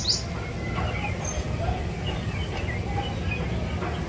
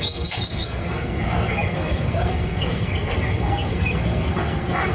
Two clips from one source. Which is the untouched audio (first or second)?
first